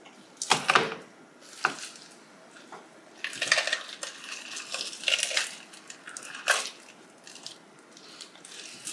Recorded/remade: recorded